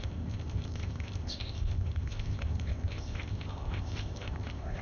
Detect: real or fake fake